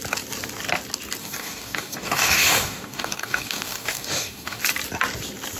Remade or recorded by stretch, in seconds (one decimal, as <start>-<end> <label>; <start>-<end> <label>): 0.0-1.2 recorded; 1.2-4.6 remade; 4.6-5.6 recorded